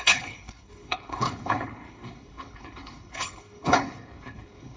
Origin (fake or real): fake